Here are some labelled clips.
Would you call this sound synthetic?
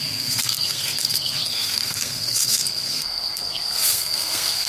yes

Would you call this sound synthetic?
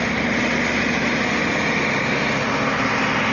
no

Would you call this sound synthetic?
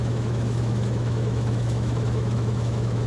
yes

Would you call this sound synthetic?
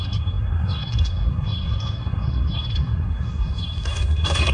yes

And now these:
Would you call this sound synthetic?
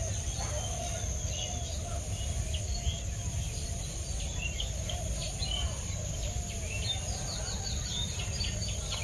no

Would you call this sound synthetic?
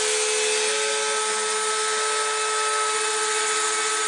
no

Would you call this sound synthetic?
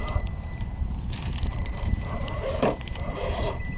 yes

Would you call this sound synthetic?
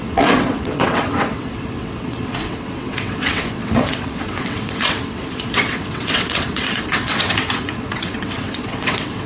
yes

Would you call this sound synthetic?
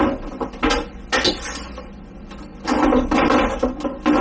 no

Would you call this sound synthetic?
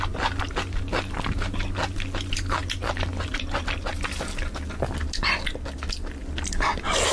no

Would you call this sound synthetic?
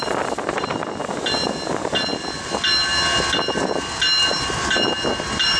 no